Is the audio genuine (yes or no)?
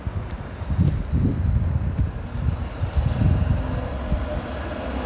yes